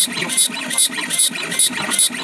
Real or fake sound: real